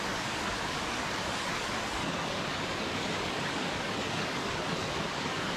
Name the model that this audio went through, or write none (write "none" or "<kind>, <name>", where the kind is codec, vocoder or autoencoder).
codec, DAC